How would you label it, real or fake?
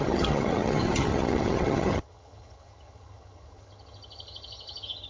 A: fake